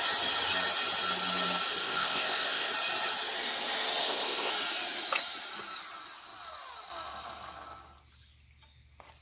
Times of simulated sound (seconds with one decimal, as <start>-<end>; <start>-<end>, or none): 1.8-2.7; 4.0-4.5

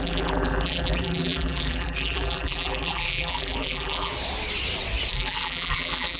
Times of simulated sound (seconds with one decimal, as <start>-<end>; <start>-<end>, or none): 0.0-4.1; 5.1-6.2

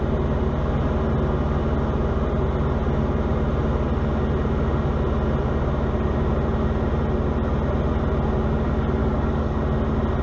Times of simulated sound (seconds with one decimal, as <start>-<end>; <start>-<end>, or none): 9.0-9.6

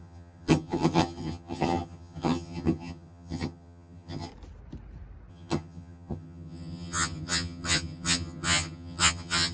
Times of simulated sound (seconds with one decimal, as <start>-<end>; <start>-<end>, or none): 0.0-4.3; 5.3-9.5

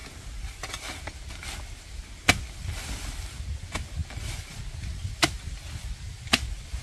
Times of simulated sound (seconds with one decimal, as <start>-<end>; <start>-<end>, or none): none

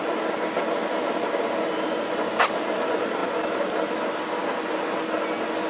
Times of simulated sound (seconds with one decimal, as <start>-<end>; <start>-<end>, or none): none